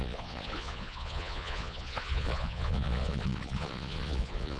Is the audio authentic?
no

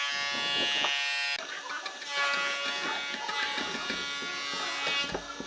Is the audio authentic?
yes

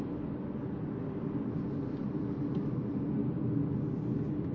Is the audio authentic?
yes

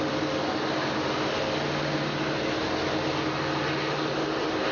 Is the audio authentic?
yes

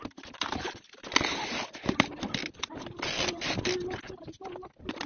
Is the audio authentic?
yes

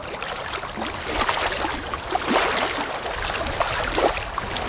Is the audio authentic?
yes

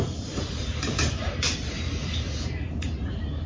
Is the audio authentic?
no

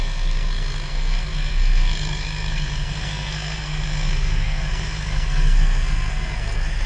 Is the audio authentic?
no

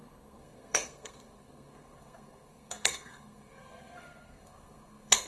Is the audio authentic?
no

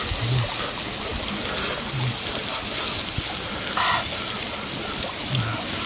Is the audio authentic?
yes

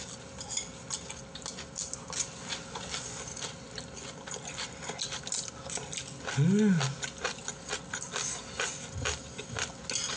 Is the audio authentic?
yes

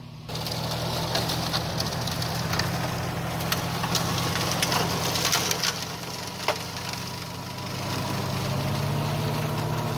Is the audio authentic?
yes